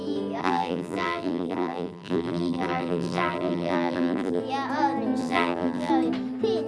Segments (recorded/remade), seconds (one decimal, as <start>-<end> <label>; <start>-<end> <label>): 0.0-0.4 recorded; 0.4-4.4 remade; 4.4-5.2 recorded; 5.2-5.9 remade; 5.9-6.7 recorded